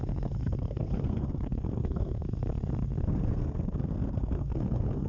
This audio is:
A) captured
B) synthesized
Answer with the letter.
B